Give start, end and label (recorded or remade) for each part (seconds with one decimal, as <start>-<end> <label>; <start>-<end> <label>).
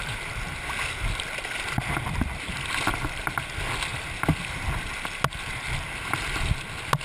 0.0-7.0 recorded